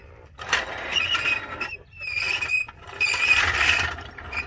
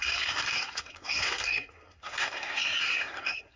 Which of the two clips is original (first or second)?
first